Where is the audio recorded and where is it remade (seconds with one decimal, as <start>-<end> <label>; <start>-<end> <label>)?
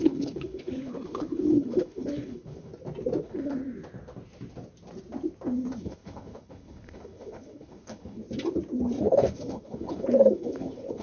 0.0-2.7 remade; 2.7-3.2 recorded; 3.2-3.6 remade; 3.6-5.8 recorded; 5.8-8.2 remade; 8.2-9.0 recorded; 9.0-11.0 remade